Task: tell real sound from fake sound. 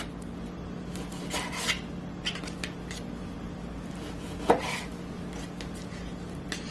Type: real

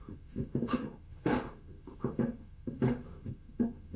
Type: fake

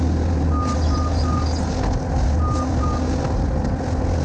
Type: real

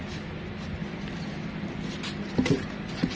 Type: real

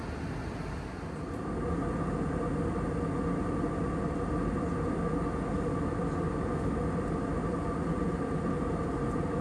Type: real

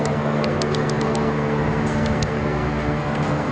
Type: fake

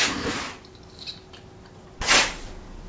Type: real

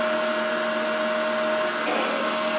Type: real